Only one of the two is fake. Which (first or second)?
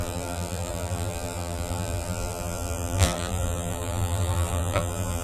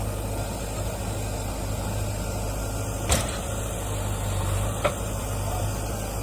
first